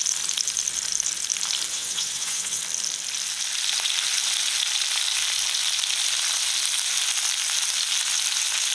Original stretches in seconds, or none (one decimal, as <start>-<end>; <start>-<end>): 0.0-1.7; 2.6-8.7